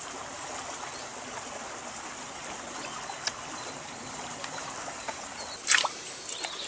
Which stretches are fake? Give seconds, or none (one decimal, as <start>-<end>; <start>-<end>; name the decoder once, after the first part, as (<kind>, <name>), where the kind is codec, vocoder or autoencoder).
none

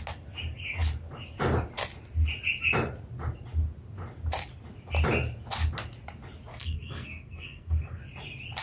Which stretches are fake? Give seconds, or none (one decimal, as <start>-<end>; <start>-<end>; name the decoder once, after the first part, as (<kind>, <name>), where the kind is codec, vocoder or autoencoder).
6.5-8.0 (codec, SNAC)

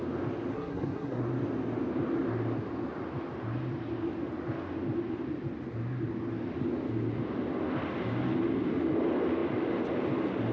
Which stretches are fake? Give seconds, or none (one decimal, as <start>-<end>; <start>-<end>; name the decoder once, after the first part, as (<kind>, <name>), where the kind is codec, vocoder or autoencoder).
0.5-1.2 (codec, SNAC)